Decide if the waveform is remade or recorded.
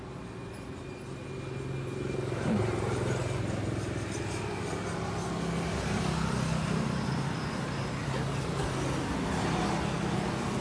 recorded